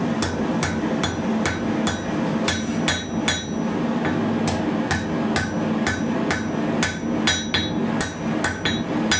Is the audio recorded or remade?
recorded